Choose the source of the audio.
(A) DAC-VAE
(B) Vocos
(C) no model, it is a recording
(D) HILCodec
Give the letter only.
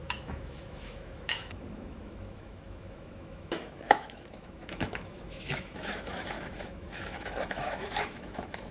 A